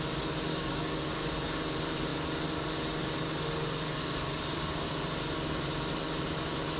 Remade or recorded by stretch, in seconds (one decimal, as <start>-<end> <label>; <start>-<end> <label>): 0.0-0.5 recorded; 0.5-1.1 remade; 1.1-6.8 recorded